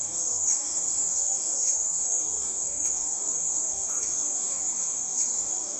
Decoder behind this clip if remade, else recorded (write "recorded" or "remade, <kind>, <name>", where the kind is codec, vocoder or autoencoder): remade, codec, DAC